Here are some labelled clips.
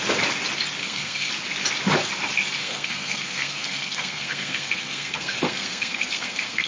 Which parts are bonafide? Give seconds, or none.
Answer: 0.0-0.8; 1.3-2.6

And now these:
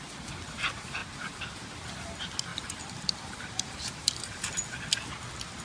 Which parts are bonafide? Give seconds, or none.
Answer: 0.0-1.0; 1.7-2.5; 4.5-5.6

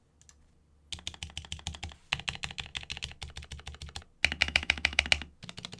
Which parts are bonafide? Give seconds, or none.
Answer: 0.0-4.4; 5.0-5.8

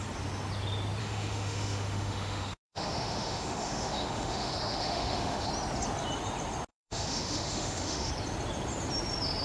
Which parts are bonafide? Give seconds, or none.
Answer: 0.0-1.0; 5.5-6.7; 8.1-9.4